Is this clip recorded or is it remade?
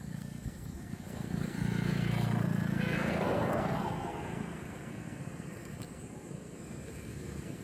remade